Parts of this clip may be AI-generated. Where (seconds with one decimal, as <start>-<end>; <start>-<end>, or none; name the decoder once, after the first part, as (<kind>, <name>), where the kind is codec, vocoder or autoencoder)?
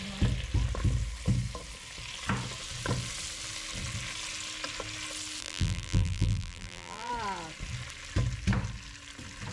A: 5.4-7.1 (vocoder, BigVGAN v2)